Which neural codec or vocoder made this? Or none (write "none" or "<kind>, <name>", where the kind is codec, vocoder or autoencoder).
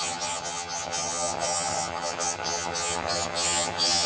vocoder, HiFi-GAN